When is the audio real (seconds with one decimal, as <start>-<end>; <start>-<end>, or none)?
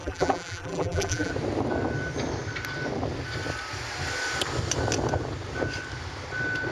1.3-6.7